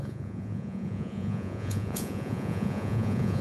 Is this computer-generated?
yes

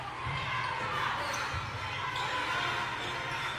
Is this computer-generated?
no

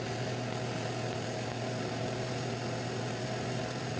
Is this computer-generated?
no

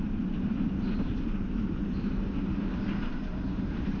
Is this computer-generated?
yes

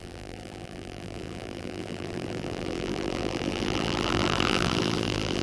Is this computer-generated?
yes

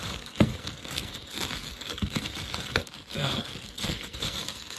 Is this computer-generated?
yes